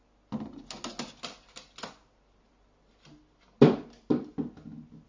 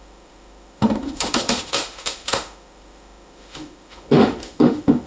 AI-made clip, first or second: second